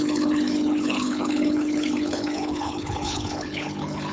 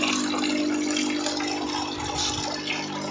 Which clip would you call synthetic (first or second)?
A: first